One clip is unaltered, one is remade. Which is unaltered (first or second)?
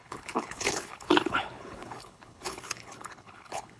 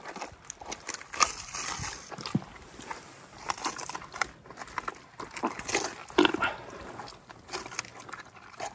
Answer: second